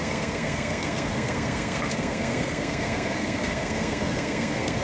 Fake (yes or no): yes